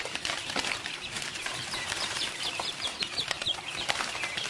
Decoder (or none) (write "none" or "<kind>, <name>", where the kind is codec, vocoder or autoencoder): vocoder, BigVGAN v2